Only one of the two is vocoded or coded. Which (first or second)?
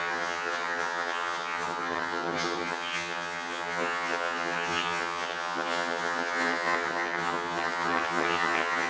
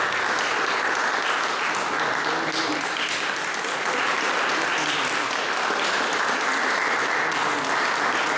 first